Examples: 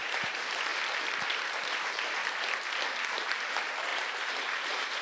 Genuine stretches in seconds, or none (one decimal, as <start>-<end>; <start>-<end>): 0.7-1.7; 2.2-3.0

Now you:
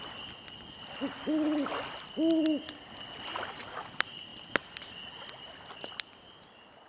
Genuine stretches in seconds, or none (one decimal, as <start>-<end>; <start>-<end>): 0.0-6.9

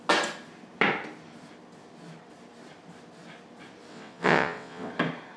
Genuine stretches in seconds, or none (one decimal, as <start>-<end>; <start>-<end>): 0.0-3.9; 4.9-5.4